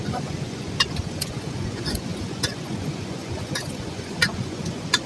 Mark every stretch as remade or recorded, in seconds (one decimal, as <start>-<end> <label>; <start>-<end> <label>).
0.0-5.1 remade